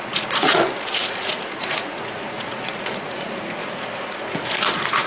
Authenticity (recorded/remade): remade